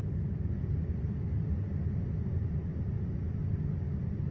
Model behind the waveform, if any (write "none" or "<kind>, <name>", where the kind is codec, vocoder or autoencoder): none